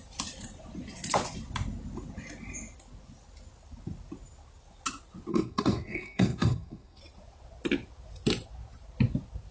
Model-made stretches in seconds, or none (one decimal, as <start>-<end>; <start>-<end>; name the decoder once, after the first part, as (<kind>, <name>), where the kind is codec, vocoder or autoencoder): 5.3-7.0 (codec, SNAC)